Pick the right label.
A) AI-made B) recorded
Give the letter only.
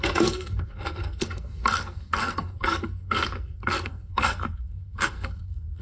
A